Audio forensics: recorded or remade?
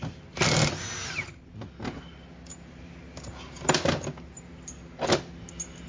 recorded